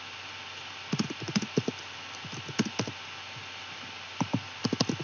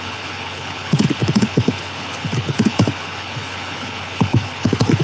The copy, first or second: second